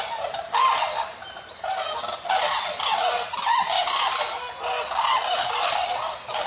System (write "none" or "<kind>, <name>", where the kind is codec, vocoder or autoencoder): none